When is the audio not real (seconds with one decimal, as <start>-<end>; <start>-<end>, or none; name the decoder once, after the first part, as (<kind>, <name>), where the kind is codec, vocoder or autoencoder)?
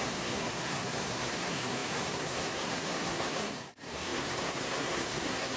0.0-5.6 (codec, SNAC)